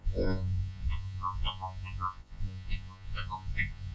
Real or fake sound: fake